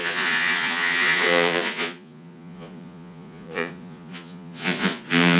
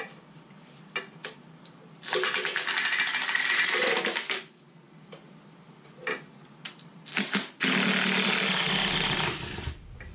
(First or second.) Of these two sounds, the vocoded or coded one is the first